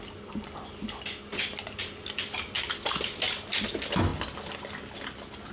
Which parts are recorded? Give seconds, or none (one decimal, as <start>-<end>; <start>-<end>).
0.0-5.5